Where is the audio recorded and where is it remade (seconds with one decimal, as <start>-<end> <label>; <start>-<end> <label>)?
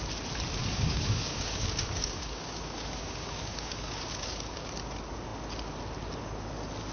0.0-0.6 recorded; 0.6-4.7 remade; 4.7-6.9 recorded